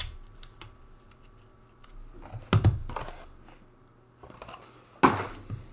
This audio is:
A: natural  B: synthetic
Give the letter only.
A